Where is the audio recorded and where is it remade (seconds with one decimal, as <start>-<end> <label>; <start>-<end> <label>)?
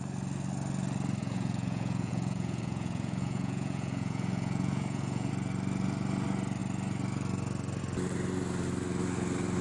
0.0-1.2 recorded; 1.2-5.3 remade; 5.3-9.6 recorded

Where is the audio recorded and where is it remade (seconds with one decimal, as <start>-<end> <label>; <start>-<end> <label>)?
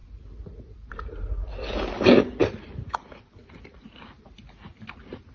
0.0-5.3 recorded